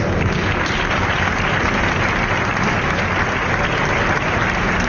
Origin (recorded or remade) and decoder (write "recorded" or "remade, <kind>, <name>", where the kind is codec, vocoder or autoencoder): recorded